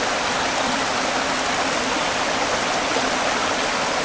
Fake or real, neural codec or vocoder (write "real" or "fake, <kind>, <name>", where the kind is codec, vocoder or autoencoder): real